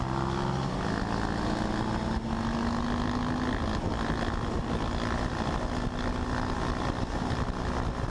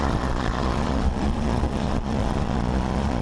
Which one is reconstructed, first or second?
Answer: second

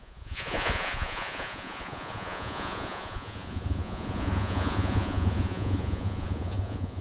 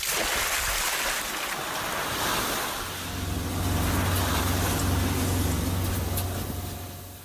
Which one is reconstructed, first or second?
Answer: first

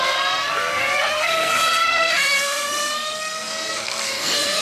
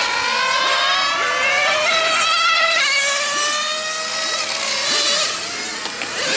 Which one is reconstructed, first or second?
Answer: first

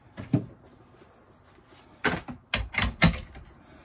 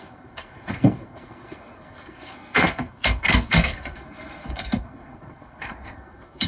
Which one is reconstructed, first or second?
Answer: second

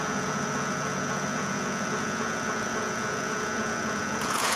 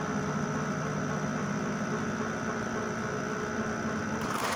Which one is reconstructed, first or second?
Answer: first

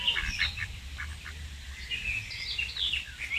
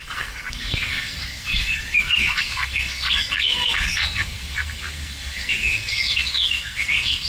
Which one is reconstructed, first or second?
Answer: second